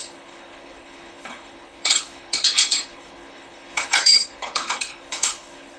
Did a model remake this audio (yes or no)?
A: yes